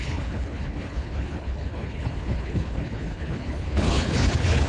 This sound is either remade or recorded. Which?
remade